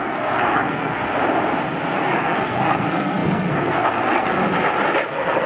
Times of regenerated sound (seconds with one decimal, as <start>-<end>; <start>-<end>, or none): 0.0-1.0; 1.9-4.4; 5.1-5.5